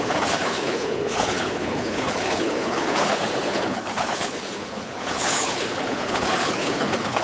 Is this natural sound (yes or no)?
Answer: no